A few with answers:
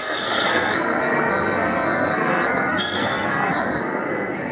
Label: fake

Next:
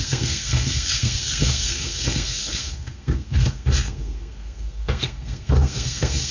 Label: fake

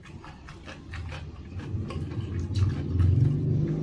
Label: real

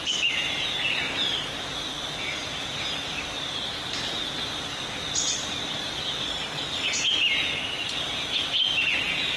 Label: real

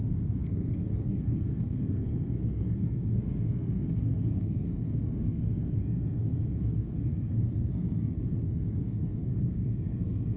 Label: fake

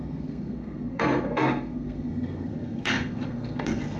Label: fake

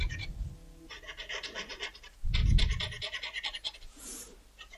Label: real